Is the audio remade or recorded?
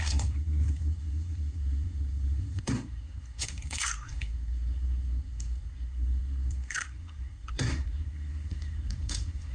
remade